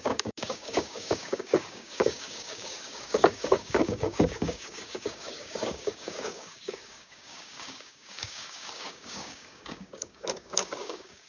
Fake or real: fake